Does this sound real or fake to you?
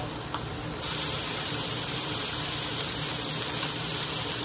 fake